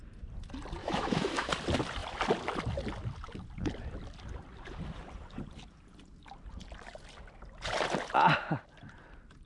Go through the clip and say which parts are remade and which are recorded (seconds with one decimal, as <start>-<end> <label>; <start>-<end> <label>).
0.0-0.8 recorded; 0.8-1.5 remade; 1.5-9.5 recorded